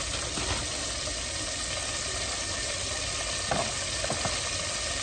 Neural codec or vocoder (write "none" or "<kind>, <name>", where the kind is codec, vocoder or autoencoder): none